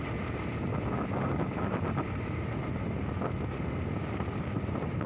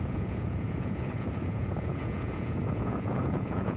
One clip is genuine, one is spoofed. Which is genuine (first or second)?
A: first